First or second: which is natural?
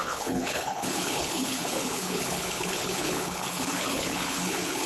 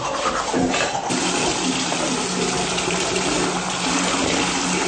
second